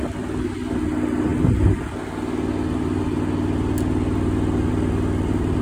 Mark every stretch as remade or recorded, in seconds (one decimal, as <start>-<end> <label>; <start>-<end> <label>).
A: 0.0-5.6 recorded